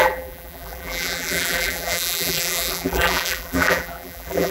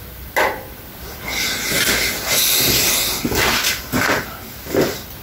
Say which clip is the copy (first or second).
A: first